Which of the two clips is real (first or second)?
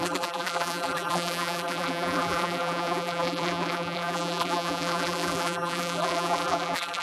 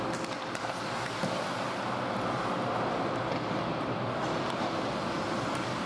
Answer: second